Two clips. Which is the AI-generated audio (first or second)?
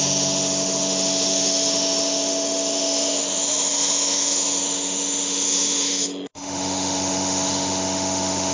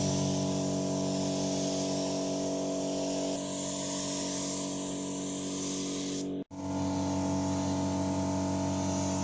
first